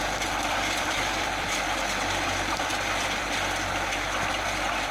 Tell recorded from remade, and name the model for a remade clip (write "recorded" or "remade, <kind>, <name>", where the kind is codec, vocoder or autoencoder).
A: remade, vocoder, BigVGAN v2